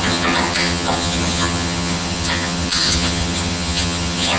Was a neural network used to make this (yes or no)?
yes